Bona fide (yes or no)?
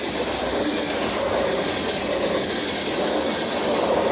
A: yes